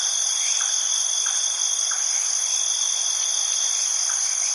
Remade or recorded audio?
recorded